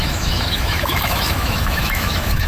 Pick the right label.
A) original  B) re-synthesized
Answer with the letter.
B